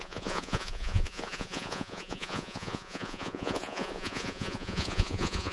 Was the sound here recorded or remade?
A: remade